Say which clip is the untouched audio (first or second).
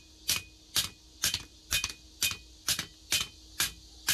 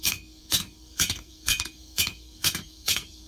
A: first